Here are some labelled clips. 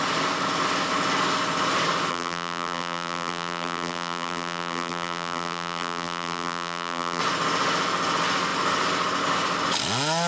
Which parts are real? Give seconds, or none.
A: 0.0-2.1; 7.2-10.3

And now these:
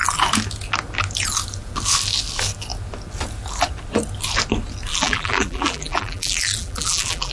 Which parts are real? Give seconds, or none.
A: 0.0-4.9

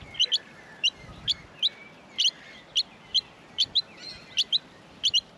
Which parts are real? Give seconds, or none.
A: 0.0-5.4